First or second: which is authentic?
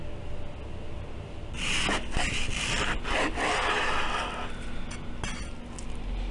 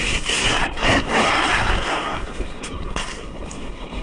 first